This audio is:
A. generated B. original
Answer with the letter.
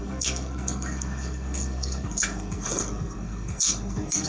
A